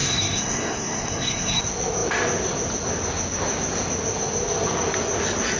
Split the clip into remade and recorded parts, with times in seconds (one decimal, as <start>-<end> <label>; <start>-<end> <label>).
0.0-1.6 remade; 1.6-5.6 recorded